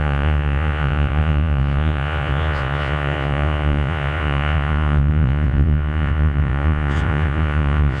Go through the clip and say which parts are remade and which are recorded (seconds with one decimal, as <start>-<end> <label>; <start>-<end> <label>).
0.0-8.0 remade

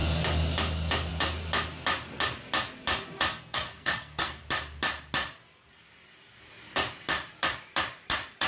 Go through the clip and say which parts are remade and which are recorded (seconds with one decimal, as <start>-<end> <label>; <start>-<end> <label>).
0.0-3.3 recorded; 3.3-4.4 remade; 4.4-8.5 recorded

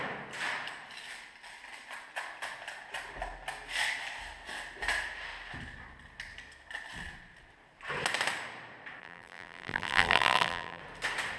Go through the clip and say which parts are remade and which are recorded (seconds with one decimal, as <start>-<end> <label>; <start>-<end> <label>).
0.0-9.0 recorded; 9.0-10.8 remade; 10.8-11.4 recorded